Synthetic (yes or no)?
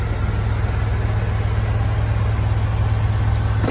no